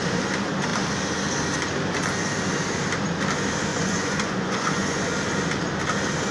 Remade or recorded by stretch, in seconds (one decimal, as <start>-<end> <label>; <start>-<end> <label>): 0.0-3.7 recorded; 3.7-5.1 remade; 5.1-6.3 recorded